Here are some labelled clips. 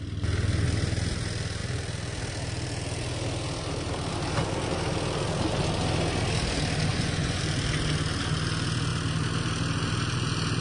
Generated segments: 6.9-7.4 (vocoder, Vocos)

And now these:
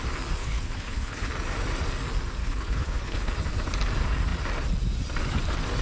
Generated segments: 0.4-1.3 (codec, HILCodec); 2.4-3.3